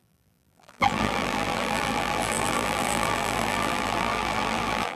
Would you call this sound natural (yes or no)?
no